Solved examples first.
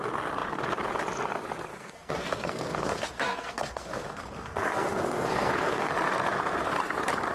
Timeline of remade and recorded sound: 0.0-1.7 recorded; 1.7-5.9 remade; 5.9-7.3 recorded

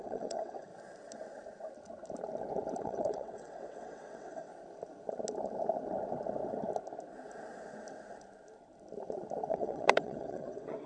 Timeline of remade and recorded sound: 0.0-0.7 remade; 0.7-2.8 recorded; 2.8-4.5 remade; 4.5-9.5 recorded; 9.5-10.9 remade

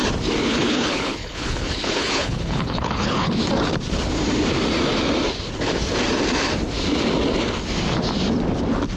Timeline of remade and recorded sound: 0.0-0.4 recorded; 0.4-3.4 remade; 3.4-9.0 recorded